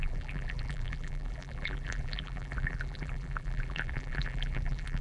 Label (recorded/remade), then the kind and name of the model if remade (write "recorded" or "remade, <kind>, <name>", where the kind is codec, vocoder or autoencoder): remade, vocoder, BigVGAN v2